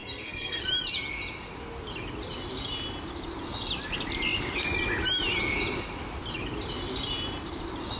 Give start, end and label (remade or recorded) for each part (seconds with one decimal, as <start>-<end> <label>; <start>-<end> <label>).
0.0-0.6 remade; 0.6-8.0 recorded